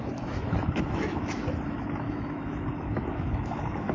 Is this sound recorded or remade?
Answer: remade